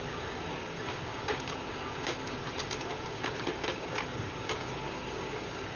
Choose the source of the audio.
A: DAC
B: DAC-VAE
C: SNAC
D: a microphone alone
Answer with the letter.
A